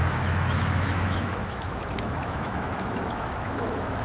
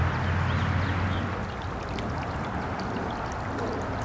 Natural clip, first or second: second